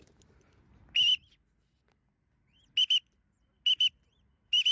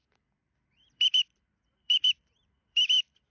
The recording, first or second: first